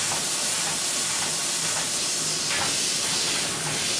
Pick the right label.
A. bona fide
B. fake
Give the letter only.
A